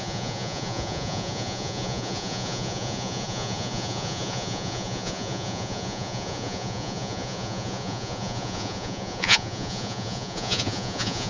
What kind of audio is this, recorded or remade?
remade